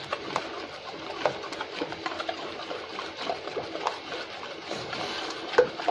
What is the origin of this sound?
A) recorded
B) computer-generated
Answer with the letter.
A